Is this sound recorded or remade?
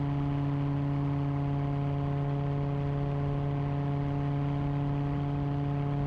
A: recorded